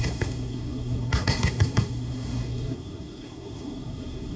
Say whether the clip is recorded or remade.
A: remade